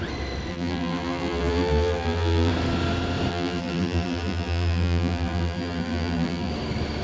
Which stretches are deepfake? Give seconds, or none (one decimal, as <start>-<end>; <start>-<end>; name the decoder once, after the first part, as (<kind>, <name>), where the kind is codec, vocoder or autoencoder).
0.5-2.5 (vocoder, BigVGAN v2); 3.3-6.5